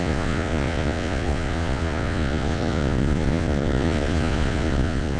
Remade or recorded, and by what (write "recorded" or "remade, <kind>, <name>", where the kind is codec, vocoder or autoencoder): remade, vocoder, Vocos